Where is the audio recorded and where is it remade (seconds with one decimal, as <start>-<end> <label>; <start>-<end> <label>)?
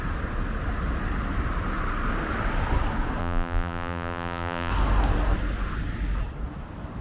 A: 0.0-3.2 recorded; 3.2-4.7 remade; 4.7-7.0 recorded